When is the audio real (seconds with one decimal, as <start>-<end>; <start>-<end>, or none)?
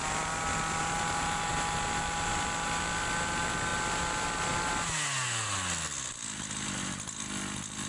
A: 0.0-7.9